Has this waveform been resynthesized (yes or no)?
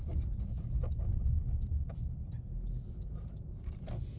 no